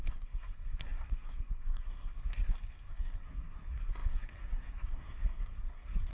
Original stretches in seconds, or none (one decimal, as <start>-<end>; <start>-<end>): none